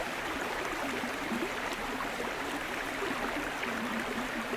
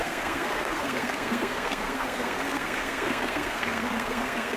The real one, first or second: first